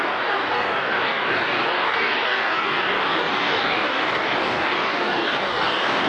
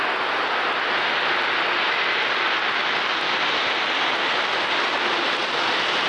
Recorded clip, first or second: second